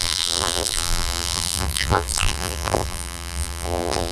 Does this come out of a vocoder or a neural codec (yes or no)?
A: yes